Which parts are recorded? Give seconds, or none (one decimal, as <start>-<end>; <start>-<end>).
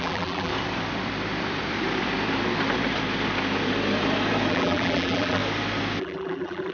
0.5-4.5; 5.4-6.0